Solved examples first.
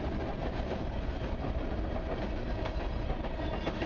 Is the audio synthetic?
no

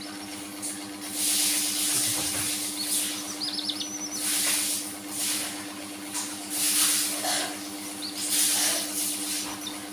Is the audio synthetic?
no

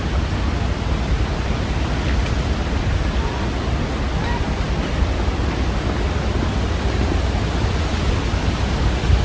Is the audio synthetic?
no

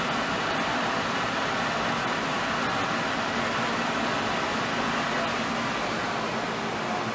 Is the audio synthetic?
no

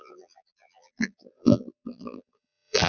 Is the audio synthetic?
yes